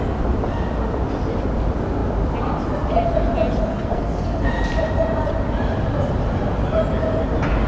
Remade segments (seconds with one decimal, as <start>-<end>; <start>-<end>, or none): 3.7-4.5